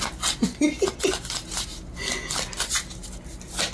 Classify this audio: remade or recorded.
recorded